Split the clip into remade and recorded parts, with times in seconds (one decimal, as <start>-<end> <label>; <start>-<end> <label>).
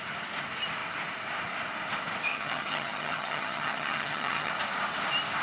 0.0-2.3 recorded; 2.3-4.5 remade; 4.5-5.4 recorded